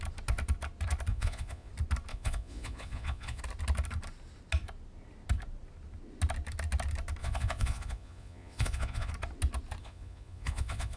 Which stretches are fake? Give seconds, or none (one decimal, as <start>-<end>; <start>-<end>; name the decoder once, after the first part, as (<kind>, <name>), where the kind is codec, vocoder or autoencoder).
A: 1.1-1.7 (vocoder, Vocos); 2.1-3.4; 7.2-9.1; 9.8-11.0